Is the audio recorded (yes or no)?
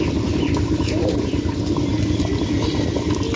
yes